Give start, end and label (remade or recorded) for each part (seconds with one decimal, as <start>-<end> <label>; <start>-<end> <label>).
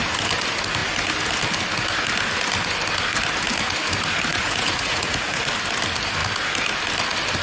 0.0-4.3 recorded; 4.3-5.5 remade; 5.5-7.4 recorded